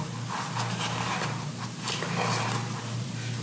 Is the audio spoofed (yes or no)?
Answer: yes